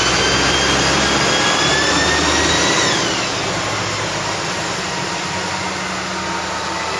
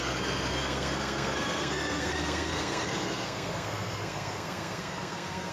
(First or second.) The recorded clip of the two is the first